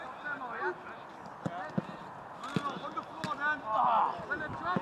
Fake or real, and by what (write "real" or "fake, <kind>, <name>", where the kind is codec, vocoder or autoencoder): real